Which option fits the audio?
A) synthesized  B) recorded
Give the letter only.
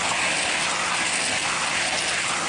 B